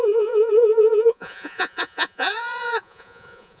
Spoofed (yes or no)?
yes